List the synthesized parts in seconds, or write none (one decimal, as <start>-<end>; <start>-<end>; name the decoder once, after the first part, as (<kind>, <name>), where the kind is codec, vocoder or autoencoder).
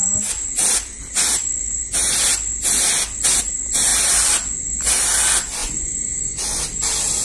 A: 5.6-6.6 (vocoder, Vocos)